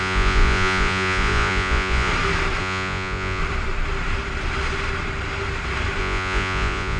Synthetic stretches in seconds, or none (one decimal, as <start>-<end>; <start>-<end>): 0.0-2.1; 2.6-3.4; 6.0-7.0